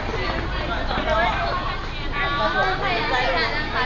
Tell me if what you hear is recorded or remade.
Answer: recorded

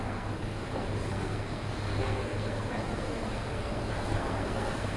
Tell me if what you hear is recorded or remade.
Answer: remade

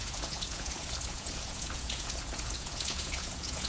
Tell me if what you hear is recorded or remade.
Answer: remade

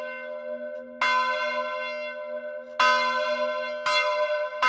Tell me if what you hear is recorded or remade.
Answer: recorded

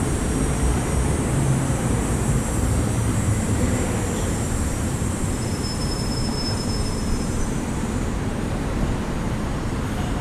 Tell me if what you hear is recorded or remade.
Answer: remade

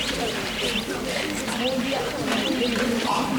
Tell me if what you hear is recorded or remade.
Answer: recorded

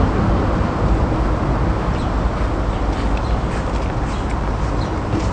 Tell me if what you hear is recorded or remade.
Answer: recorded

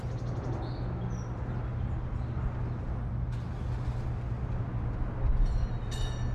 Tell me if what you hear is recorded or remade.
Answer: recorded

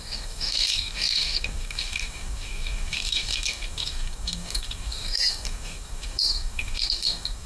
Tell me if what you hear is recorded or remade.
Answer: remade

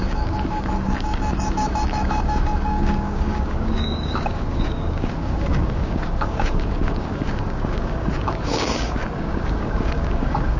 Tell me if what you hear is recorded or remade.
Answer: remade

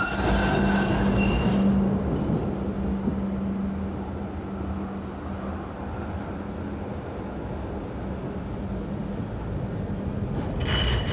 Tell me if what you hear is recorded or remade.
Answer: recorded